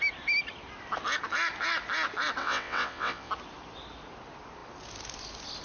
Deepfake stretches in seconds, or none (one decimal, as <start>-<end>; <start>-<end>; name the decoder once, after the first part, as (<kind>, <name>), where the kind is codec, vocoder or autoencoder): 2.4-3.3 (vocoder, WaveNeXt)